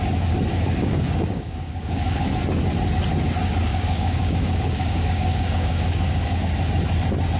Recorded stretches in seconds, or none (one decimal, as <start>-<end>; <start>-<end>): 0.0-0.5; 2.3-3.7; 6.4-7.4